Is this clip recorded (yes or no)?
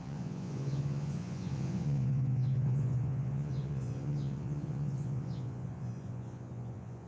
no